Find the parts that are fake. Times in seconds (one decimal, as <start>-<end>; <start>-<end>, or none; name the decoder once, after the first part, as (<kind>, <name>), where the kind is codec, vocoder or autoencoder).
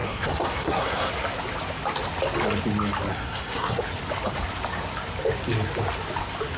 0.0-1.1 (codec, SNAC); 3.1-3.8